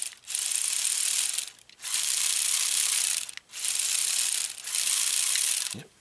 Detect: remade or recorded recorded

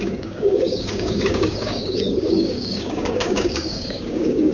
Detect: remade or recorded remade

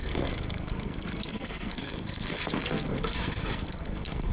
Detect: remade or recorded remade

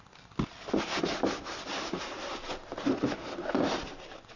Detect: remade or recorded recorded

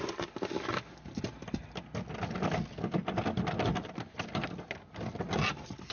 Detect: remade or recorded recorded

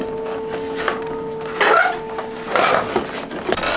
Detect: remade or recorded recorded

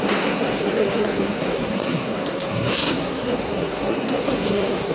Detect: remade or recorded remade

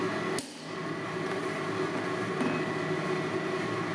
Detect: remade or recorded recorded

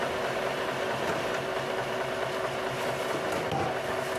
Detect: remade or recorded recorded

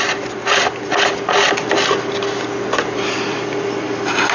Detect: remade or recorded recorded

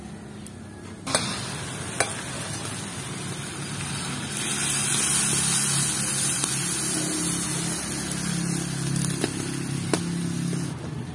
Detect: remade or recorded recorded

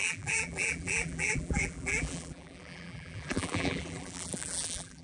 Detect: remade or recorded remade